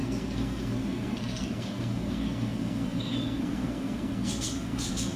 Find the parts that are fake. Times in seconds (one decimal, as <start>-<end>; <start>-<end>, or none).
0.0-5.2